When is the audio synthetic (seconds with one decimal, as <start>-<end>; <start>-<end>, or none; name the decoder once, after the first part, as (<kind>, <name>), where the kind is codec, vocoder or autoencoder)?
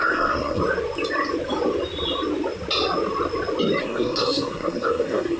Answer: 0.0-0.6 (codec, SNAC); 3.8-5.4